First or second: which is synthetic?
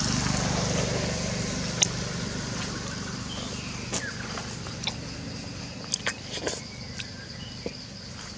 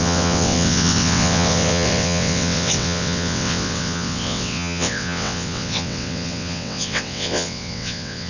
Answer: second